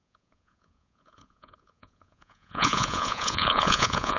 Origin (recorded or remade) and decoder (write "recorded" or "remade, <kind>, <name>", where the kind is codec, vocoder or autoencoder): remade, vocoder, Vocos